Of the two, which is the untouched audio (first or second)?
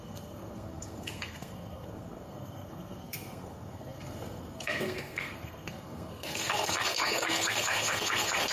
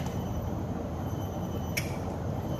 second